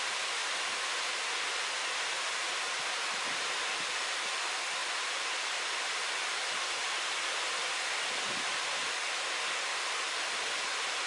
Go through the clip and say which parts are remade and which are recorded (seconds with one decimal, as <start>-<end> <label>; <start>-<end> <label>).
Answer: 0.0-11.1 recorded